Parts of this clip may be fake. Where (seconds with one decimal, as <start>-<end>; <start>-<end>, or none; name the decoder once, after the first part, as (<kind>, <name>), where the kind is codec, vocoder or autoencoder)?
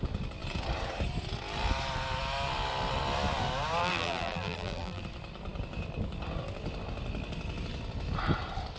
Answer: 3.8-5.0 (vocoder, BigVGAN v2)